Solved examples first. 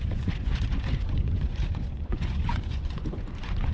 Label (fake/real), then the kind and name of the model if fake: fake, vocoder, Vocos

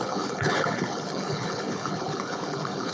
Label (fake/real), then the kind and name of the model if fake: fake, codec, HILCodec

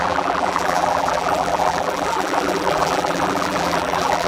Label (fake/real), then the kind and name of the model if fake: fake, vocoder, BigVGAN v2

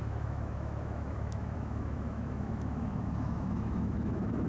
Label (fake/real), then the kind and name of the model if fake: fake, autoencoder, DAC-VAE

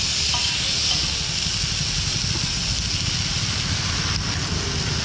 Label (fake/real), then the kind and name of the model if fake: real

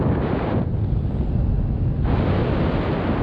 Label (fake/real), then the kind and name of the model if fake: real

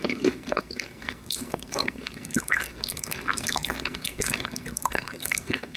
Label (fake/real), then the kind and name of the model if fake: fake, codec, SNAC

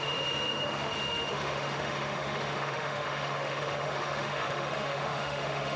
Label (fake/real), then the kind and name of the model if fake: fake, autoencoder, DAC-VAE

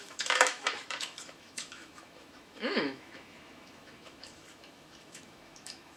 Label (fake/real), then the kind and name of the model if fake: fake, autoencoder, DAC-VAE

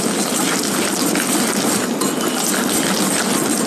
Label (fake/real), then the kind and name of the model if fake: real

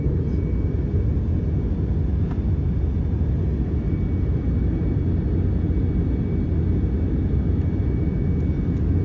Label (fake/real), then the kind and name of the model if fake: real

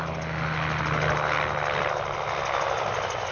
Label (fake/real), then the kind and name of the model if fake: real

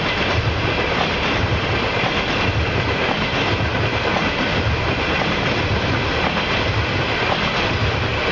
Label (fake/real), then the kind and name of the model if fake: real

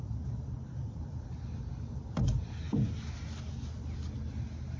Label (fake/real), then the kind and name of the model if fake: real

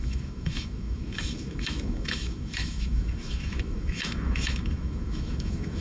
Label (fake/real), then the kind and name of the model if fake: fake, autoencoder, DAC-VAE